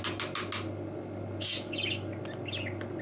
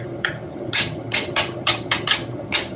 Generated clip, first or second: second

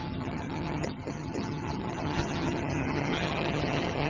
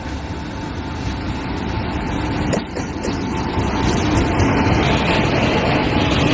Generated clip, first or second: first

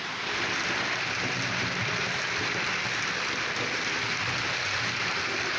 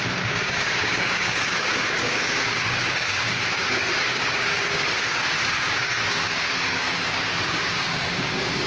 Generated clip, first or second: second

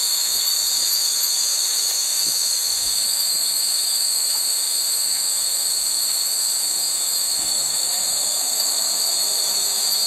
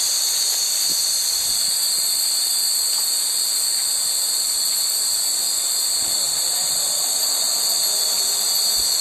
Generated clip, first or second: first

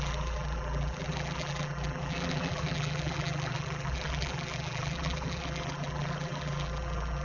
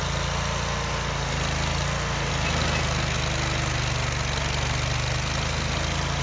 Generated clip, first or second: first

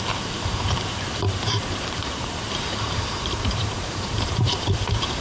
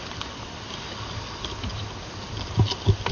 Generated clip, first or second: first